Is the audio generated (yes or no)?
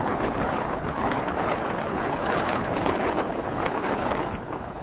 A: yes